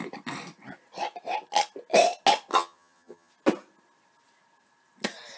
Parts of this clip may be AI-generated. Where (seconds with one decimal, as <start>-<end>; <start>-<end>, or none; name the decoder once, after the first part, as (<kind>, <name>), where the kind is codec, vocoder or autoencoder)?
2.5-3.3 (vocoder, HiFi-GAN)